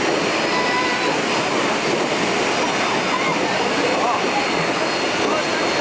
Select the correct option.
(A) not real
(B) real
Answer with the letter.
B